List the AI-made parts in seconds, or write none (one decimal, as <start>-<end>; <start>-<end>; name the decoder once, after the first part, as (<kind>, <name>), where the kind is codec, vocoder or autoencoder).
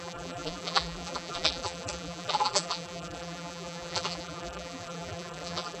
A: 0.0-5.8 (vocoder, BigVGAN v2)